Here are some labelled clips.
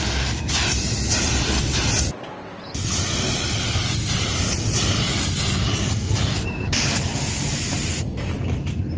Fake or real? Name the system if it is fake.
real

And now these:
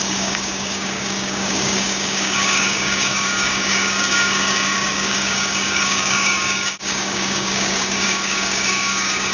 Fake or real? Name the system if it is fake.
fake, codec, DAC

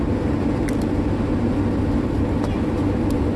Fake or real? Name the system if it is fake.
real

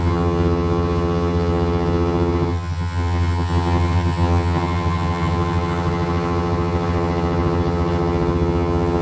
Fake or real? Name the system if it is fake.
fake, vocoder, HiFi-GAN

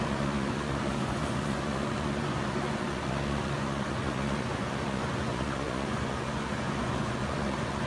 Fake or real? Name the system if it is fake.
fake, vocoder, Vocos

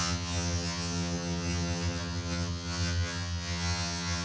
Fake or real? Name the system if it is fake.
fake, vocoder, HiFi-GAN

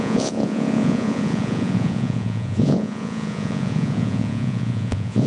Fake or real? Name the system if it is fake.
fake, vocoder, Vocos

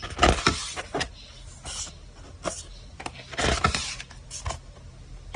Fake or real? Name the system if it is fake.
real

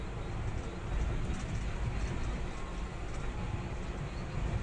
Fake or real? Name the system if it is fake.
real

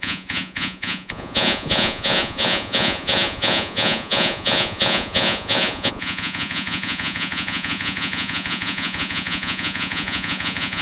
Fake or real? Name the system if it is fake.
fake, vocoder, Vocos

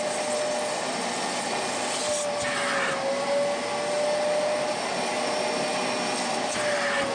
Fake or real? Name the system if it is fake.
real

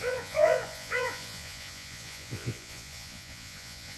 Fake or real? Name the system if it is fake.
fake, vocoder, Vocos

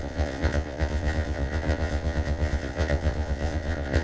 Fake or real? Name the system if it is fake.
fake, vocoder, Vocos